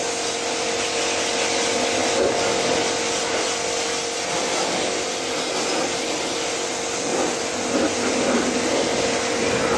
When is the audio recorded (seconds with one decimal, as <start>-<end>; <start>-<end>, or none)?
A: 0.0-9.8